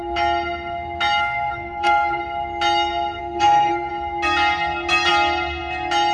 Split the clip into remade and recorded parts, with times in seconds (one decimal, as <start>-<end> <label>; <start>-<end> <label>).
0.0-1.2 recorded; 1.2-2.2 remade; 2.2-3.2 recorded; 3.2-3.9 remade; 3.9-6.1 recorded